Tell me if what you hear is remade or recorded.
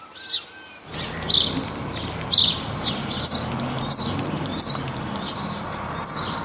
recorded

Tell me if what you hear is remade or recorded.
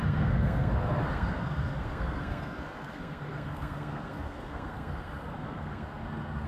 remade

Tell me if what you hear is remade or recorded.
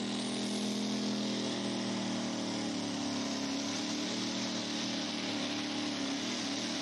recorded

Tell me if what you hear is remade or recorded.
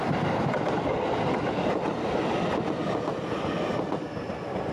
recorded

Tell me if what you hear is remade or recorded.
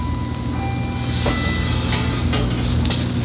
recorded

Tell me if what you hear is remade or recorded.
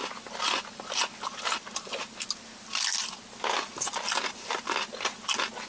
recorded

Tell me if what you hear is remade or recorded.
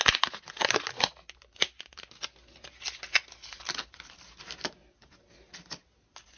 recorded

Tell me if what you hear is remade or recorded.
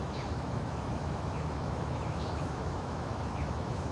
remade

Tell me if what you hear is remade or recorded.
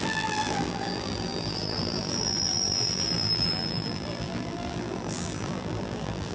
remade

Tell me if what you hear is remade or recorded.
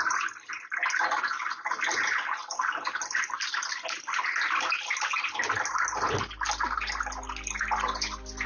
recorded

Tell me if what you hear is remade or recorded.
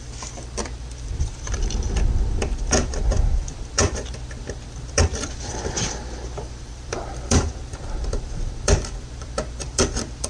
remade